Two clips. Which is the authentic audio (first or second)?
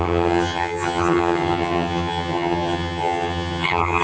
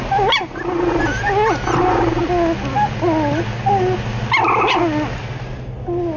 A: second